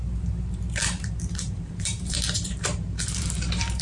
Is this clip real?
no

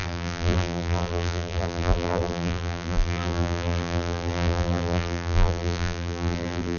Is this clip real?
no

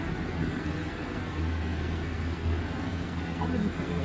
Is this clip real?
no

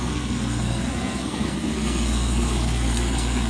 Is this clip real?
no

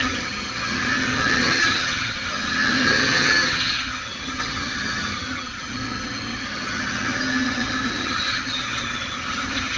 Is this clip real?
no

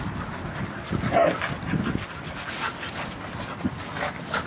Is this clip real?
yes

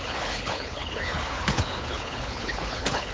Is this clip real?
no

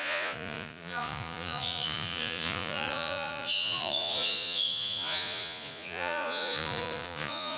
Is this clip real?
no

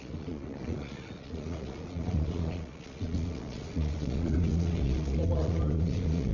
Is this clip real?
no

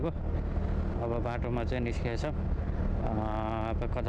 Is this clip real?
yes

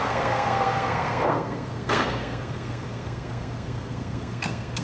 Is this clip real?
no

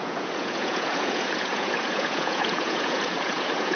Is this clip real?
no